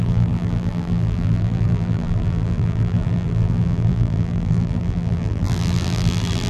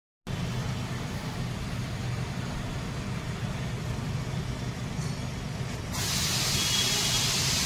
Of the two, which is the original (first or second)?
second